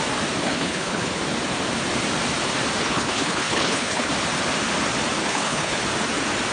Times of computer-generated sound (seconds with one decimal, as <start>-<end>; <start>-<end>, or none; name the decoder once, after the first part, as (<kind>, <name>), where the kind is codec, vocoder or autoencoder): 0.4-1.2 (codec, HILCodec); 2.8-4.1; 5.2-5.8